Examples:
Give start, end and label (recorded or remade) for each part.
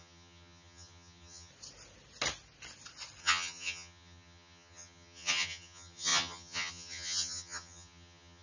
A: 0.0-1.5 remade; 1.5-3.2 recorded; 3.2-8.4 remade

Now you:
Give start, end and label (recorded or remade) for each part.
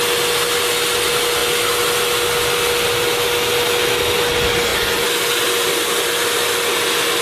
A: 0.0-7.2 recorded